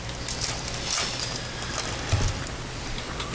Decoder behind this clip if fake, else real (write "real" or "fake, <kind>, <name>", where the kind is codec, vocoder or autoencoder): real